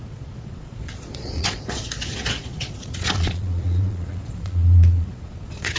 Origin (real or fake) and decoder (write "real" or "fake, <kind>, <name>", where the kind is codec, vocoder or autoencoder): fake, vocoder, Vocos